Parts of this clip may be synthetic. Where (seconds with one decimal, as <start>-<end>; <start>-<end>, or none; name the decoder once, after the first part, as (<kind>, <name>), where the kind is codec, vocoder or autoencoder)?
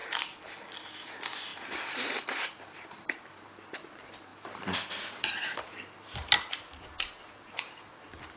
1.5-3.9 (vocoder, BigVGAN v2); 4.3-7.9